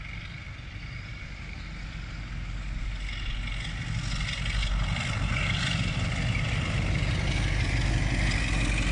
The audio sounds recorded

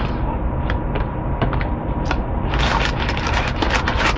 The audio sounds recorded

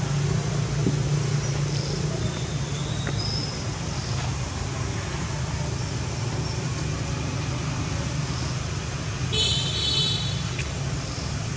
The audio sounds recorded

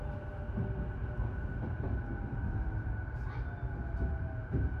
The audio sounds recorded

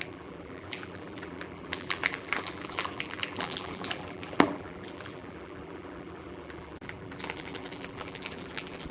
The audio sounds remade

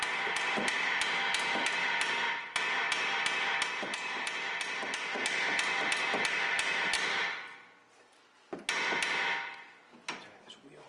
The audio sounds recorded